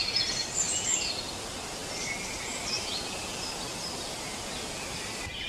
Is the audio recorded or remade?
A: recorded